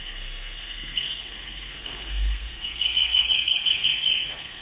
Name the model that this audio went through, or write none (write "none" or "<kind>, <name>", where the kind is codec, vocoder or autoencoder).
codec, SNAC